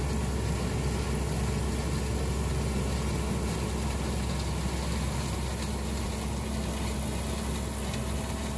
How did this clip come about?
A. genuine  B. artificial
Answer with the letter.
A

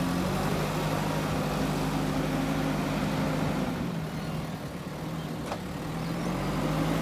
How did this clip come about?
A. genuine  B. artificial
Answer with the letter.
A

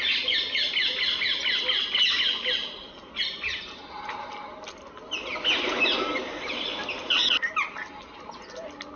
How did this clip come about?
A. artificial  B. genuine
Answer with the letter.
B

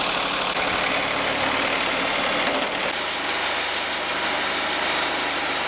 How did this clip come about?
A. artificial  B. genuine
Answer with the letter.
B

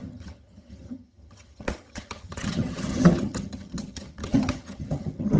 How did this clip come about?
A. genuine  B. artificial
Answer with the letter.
B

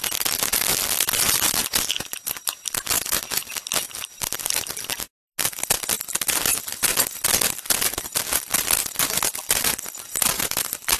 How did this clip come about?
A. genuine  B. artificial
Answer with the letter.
A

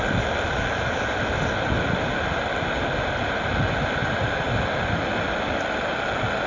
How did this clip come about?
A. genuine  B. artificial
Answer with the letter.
A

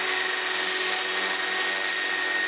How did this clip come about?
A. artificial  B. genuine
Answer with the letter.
B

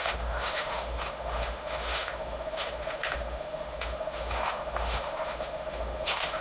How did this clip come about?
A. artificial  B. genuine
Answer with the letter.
A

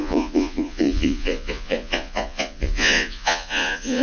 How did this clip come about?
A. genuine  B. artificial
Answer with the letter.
B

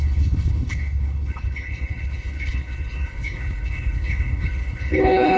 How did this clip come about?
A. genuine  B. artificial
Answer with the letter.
B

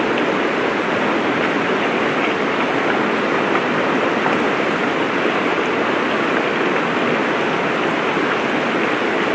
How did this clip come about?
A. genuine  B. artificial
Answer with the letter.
A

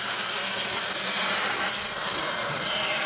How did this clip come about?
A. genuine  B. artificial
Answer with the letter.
B